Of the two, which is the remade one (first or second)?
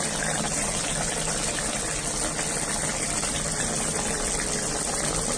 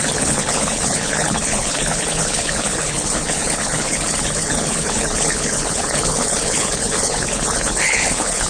second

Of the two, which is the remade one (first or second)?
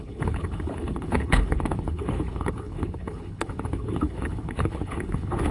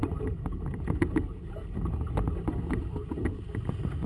first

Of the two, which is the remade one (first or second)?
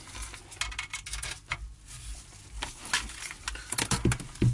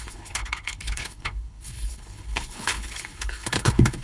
second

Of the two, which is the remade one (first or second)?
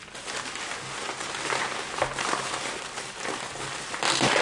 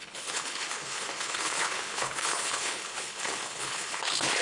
second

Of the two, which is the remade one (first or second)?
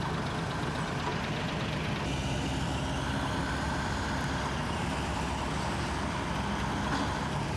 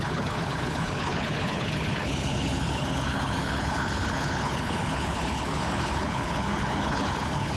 second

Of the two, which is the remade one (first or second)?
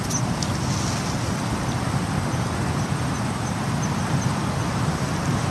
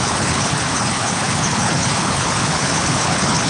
second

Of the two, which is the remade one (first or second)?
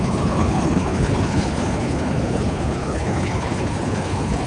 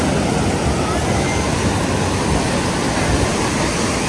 first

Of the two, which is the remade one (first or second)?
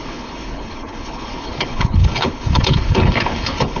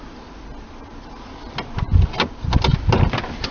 first